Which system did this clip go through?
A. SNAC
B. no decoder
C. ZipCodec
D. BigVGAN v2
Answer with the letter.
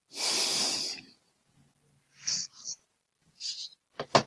B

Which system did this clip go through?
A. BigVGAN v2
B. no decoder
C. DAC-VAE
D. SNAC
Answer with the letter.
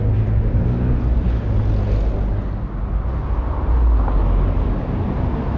B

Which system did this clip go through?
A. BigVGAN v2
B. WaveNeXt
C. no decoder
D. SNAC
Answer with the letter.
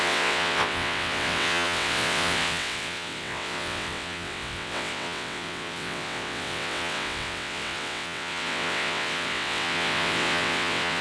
B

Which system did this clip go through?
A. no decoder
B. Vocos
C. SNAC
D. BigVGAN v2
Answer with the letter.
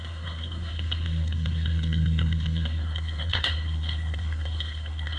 C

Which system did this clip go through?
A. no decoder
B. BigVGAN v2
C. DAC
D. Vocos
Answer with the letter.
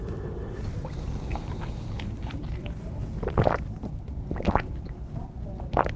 B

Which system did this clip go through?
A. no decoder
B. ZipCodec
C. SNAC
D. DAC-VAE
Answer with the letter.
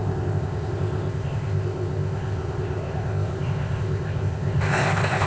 B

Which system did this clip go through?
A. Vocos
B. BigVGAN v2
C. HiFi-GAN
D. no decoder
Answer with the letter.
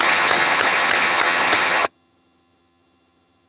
C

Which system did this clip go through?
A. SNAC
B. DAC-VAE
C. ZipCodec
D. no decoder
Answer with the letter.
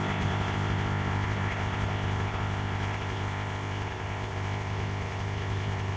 C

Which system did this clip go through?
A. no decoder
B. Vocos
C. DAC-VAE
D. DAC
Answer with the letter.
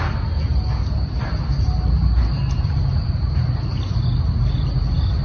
A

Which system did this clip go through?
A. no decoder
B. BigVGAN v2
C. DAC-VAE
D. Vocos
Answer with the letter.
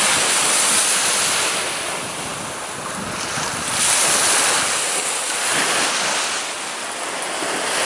A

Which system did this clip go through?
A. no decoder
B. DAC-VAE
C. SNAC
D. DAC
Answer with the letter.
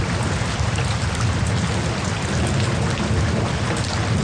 A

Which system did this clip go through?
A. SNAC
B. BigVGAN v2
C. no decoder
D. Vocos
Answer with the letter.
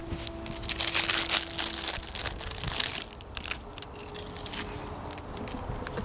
C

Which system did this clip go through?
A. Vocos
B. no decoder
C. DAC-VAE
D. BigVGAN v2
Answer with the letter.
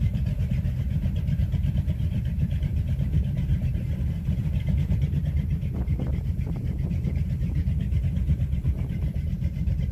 D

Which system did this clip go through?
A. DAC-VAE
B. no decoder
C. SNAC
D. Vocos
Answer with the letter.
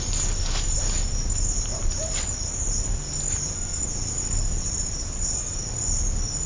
B